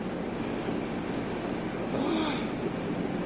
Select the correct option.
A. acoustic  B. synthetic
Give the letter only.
A